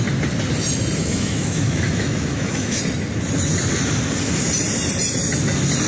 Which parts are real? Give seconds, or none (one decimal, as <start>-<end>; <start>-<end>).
0.0-1.0; 2.8-5.9